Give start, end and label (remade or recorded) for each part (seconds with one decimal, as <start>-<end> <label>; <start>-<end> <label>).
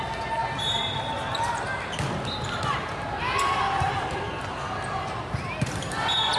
0.0-6.4 recorded